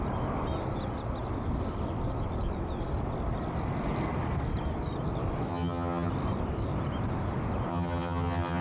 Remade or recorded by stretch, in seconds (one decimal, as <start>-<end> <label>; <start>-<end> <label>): 0.0-5.5 recorded; 5.5-6.1 remade; 6.1-7.7 recorded; 7.7-8.6 remade